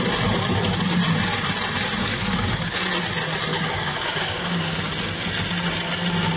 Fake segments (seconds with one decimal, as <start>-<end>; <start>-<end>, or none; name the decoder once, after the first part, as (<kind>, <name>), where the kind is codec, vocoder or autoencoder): 2.0-2.8 (codec, DAC); 3.5-4.8